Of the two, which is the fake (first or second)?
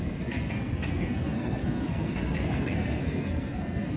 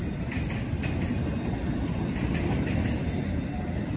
first